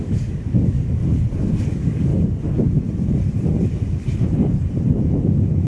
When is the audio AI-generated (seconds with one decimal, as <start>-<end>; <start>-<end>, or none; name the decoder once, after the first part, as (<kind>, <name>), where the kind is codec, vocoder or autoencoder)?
0.0-1.0 (codec, DAC); 1.6-2.1